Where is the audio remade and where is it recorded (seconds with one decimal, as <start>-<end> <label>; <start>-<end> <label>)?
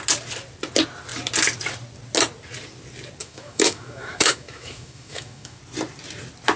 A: 0.0-3.2 recorded; 3.2-5.6 remade; 5.6-6.6 recorded